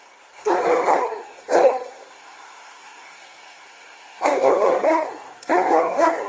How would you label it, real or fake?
fake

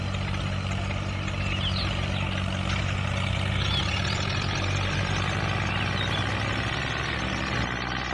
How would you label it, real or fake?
real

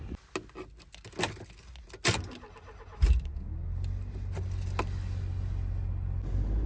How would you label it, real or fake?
real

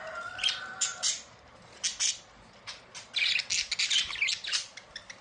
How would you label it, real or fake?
real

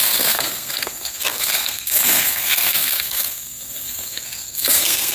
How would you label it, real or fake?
fake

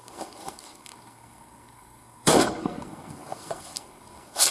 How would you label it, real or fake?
fake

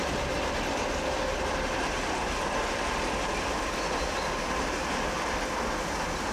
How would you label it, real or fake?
real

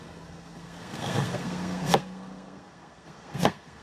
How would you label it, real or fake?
fake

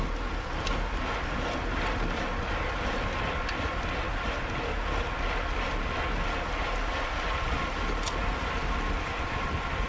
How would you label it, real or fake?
real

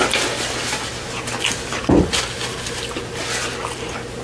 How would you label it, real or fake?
real